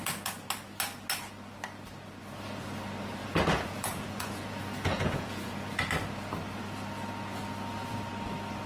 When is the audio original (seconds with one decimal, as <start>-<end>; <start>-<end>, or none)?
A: 0.0-3.2; 5.9-8.7